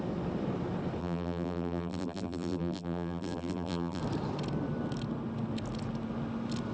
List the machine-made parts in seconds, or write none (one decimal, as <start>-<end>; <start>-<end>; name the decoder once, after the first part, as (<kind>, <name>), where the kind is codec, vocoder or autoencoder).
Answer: 1.0-4.0 (vocoder, BigVGAN v2)